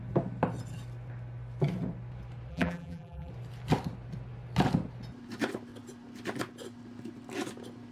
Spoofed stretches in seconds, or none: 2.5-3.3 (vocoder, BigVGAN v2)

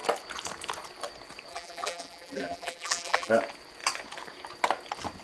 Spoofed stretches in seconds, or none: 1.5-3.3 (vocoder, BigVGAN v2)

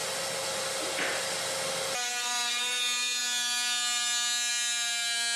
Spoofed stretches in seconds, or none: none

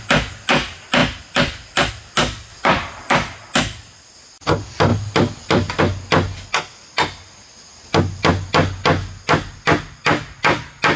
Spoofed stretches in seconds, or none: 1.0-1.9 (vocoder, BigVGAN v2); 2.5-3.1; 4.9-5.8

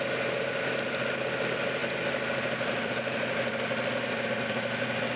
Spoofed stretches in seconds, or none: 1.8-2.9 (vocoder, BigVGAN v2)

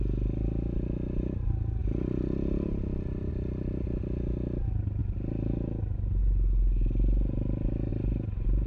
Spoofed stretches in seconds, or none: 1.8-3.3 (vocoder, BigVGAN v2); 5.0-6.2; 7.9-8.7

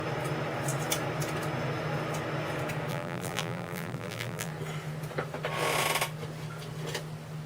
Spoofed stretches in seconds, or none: 2.9-4.5 (vocoder, BigVGAN v2)